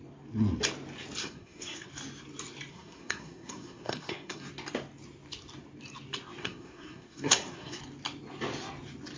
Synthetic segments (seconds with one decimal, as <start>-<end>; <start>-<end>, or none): 1.2-1.9; 2.7-4.5; 6.4-7.8